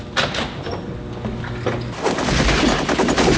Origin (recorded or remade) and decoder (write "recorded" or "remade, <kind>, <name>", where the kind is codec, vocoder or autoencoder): recorded